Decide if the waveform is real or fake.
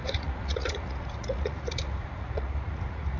fake